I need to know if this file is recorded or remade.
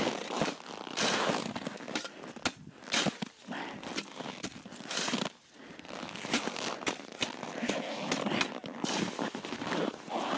recorded